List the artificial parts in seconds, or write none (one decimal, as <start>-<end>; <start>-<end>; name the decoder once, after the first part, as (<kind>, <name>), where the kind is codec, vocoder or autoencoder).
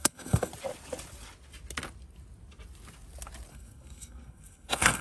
0.0-0.5 (codec, SNAC); 3.5-5.0